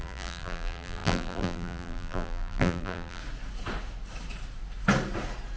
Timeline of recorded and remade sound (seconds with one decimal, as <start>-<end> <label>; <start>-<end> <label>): 0.0-3.2 remade; 3.2-5.6 recorded